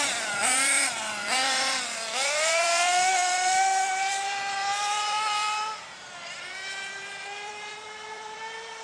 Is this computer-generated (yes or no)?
yes